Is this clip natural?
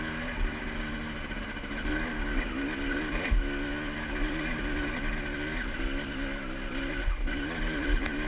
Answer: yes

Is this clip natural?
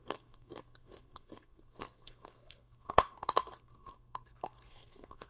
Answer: no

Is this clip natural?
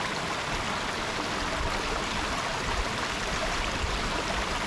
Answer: yes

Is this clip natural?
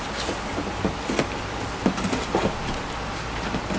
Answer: yes